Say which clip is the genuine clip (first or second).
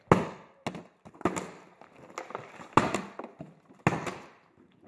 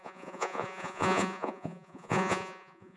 first